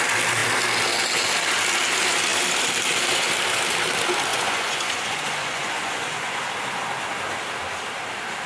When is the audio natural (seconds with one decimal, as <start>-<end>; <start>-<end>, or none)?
0.0-4.3; 6.4-8.5